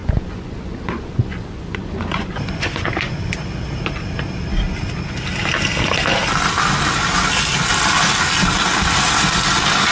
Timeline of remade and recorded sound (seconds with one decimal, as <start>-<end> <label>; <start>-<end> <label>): 0.0-3.3 remade; 3.3-9.9 recorded